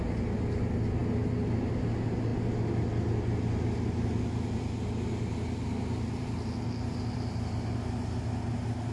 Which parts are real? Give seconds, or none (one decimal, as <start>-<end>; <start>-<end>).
0.0-8.9